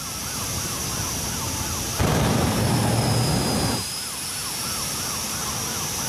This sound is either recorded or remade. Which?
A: recorded